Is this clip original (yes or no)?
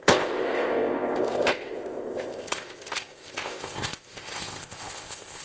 no